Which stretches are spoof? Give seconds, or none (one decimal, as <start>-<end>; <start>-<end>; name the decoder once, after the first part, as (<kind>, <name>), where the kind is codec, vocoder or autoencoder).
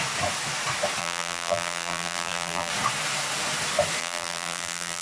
1.0-2.7 (vocoder, BigVGAN v2); 4.0-5.0